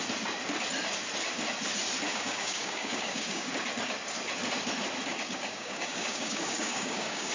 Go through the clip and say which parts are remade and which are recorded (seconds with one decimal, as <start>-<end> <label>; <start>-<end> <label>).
0.0-2.1 recorded; 2.1-3.5 remade; 3.5-5.1 recorded; 5.1-7.3 remade